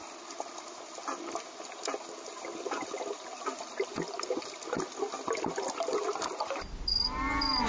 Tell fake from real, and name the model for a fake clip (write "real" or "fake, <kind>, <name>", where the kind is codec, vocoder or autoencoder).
real